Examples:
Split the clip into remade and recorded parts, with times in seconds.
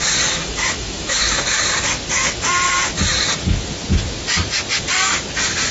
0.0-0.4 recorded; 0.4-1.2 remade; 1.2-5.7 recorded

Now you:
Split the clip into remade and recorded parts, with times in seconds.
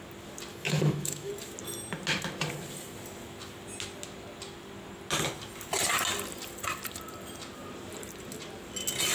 0.0-0.5 recorded; 0.5-1.3 remade; 1.3-9.1 recorded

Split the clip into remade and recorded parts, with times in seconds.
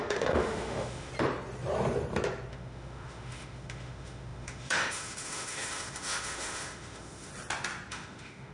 0.0-1.1 remade; 1.1-2.5 recorded; 2.5-7.3 remade; 7.3-7.9 recorded; 7.9-8.5 remade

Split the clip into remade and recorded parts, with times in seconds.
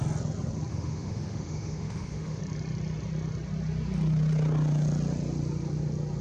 0.0-0.7 recorded; 0.7-2.4 remade; 2.4-6.2 recorded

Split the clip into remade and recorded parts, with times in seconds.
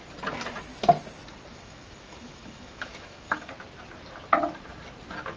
0.0-1.5 recorded; 1.5-3.5 remade; 3.5-5.4 recorded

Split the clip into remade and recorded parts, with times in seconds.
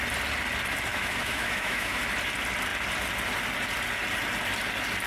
0.0-0.9 recorded; 0.9-2.0 remade; 2.0-5.1 recorded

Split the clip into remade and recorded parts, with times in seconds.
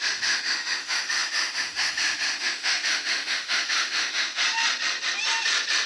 0.0-4.4 remade; 4.4-5.9 recorded